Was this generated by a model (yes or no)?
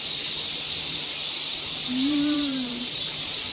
yes